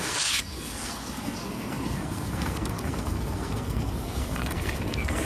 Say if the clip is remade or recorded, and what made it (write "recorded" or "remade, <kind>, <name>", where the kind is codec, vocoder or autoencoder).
remade, codec, SNAC